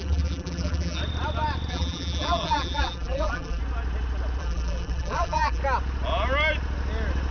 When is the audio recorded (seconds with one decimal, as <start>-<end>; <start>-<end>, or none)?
1.0-1.7; 3.6-4.4; 5.6-7.3